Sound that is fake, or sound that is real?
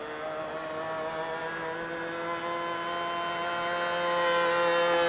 real